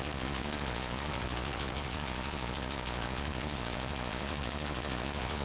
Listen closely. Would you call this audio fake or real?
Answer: fake